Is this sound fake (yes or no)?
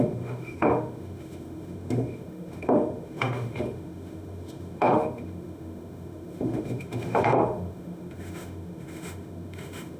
yes